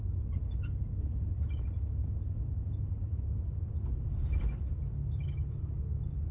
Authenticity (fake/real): real